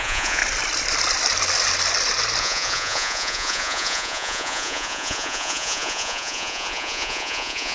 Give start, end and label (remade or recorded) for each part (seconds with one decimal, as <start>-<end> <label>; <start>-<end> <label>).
0.0-0.4 remade; 0.4-2.4 recorded; 2.4-7.7 remade